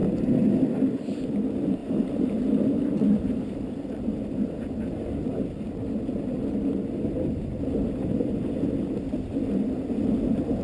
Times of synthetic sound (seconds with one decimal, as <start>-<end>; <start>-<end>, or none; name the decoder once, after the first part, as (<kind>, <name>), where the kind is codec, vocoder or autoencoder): 1.8-5.3 (vocoder, BigVGAN v2)